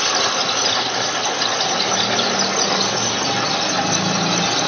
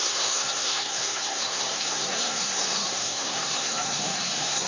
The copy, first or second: second